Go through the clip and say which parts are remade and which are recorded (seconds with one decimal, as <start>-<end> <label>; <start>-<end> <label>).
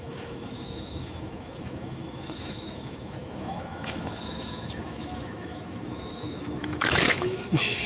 0.0-7.9 remade